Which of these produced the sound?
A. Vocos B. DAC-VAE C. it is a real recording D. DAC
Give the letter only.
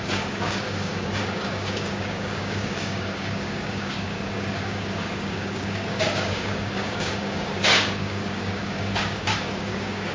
D